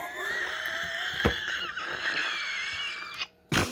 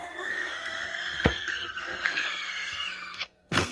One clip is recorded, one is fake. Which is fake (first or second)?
second